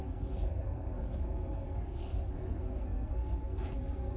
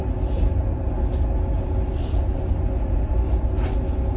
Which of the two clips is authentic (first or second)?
second